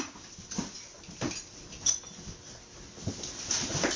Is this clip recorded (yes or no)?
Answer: yes